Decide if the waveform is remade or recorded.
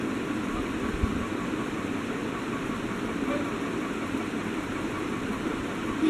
remade